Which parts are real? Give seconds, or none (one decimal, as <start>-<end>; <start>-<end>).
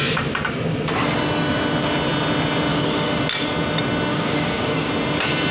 0.0-2.7; 3.2-4.1; 4.9-5.5